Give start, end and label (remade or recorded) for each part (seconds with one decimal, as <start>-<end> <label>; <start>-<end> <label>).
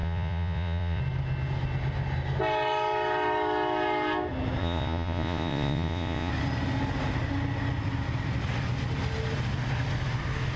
0.0-1.0 remade; 1.0-4.6 recorded; 4.6-6.3 remade; 6.3-10.6 recorded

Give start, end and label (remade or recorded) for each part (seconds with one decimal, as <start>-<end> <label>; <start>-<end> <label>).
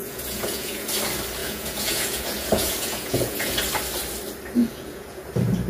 0.0-0.9 remade; 0.9-1.4 recorded; 1.4-3.6 remade; 3.6-4.6 recorded; 4.6-5.3 remade; 5.3-5.7 recorded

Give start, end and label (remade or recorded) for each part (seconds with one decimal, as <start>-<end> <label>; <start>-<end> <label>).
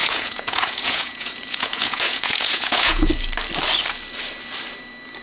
0.0-3.1 remade; 3.1-5.2 recorded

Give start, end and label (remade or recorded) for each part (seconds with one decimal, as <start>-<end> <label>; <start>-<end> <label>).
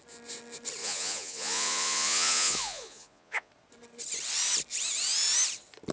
0.0-0.8 recorded; 0.8-3.5 remade; 3.5-5.9 recorded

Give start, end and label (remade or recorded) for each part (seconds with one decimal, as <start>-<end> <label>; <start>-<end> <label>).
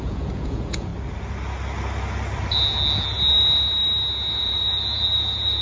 0.0-0.9 remade; 0.9-4.3 recorded; 4.3-5.6 remade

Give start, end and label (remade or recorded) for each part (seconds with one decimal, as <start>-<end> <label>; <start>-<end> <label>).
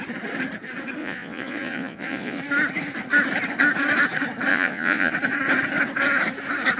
0.0-1.0 recorded; 1.0-2.4 remade; 2.4-4.5 recorded; 4.5-5.1 remade; 5.1-6.8 recorded